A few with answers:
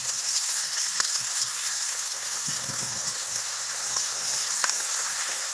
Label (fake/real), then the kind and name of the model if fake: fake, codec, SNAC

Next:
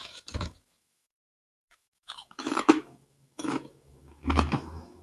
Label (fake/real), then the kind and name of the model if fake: fake, autoencoder, DAC-VAE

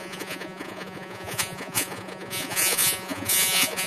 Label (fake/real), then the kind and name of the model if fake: fake, vocoder, Vocos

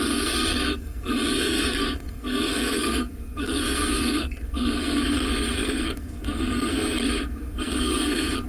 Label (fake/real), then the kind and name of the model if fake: fake, codec, SNAC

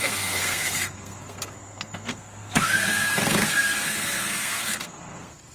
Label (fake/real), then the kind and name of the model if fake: fake, codec, SNAC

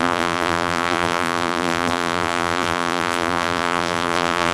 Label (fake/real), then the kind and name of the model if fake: fake, vocoder, BigVGAN v2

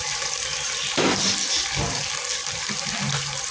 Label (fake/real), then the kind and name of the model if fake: real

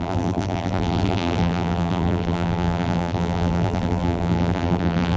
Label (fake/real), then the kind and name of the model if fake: fake, vocoder, BigVGAN v2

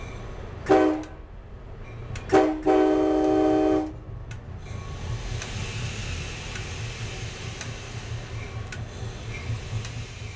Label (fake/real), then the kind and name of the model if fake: real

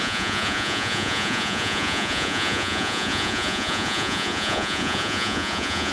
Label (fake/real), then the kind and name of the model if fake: fake, vocoder, Vocos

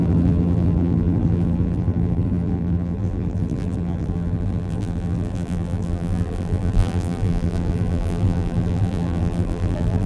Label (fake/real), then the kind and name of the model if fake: fake, vocoder, BigVGAN v2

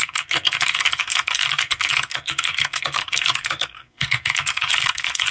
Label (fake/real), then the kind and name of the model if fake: fake, codec, SNAC